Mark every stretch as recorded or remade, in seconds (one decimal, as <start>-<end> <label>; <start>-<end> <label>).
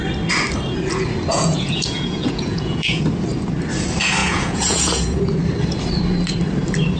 0.0-1.3 recorded; 1.3-3.0 remade; 3.0-4.2 recorded; 4.2-5.2 remade; 5.2-7.0 recorded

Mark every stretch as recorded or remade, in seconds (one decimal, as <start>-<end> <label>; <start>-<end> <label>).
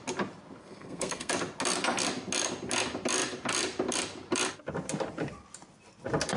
0.0-0.6 recorded; 0.6-1.3 remade; 1.3-6.4 recorded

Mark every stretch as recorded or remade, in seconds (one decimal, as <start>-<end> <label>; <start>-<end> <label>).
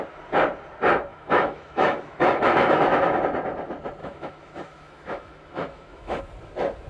0.0-1.1 recorded; 1.1-3.2 remade; 3.2-4.0 recorded; 4.0-6.2 remade; 6.2-6.9 recorded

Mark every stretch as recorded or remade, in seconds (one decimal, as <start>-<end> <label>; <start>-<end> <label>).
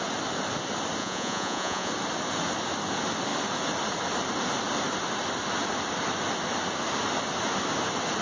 0.0-1.0 recorded; 1.0-1.9 remade; 1.9-8.2 recorded